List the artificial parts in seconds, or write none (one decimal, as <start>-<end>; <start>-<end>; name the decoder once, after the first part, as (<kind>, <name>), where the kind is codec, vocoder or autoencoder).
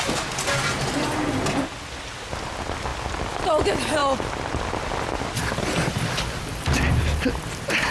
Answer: none